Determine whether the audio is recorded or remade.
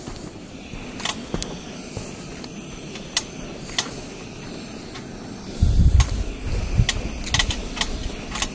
recorded